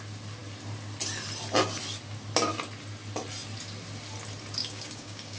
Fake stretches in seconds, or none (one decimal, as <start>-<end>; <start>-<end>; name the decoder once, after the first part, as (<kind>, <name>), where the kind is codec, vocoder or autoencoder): 4.6-5.4 (codec, DAC)